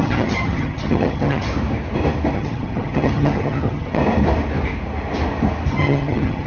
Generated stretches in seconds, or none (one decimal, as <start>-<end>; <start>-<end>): 0.0-1.5; 2.3-4.0; 5.7-6.5